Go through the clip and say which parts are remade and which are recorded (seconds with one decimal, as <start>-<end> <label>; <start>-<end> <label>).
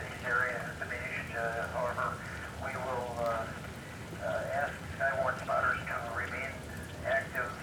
0.0-7.6 recorded